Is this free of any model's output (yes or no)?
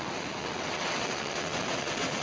no